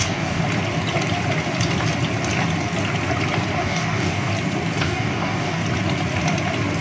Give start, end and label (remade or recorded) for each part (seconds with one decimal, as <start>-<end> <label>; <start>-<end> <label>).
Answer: 0.0-0.4 remade; 0.4-3.6 recorded; 3.6-4.3 remade; 4.3-4.8 recorded; 4.8-5.6 remade; 5.6-6.8 recorded